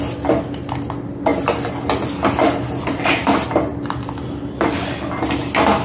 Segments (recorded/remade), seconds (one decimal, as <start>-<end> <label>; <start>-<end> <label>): 0.0-5.8 recorded

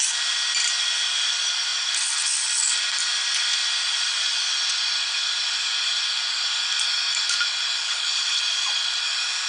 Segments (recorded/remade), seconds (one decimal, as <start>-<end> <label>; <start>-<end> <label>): 0.0-7.8 recorded; 7.8-8.4 remade; 8.4-9.5 recorded

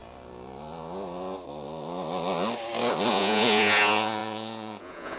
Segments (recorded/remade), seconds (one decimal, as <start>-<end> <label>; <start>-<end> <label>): 0.0-3.1 recorded; 3.1-5.2 remade

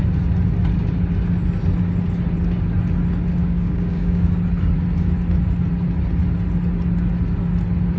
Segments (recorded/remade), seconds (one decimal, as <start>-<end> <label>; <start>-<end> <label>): 0.0-3.4 recorded; 3.4-4.3 remade; 4.3-8.0 recorded

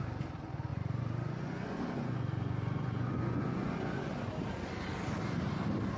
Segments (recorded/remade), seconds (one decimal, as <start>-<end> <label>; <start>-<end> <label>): 0.0-0.7 recorded; 0.7-4.3 remade; 4.3-6.0 recorded